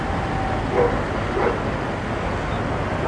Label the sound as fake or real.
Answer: real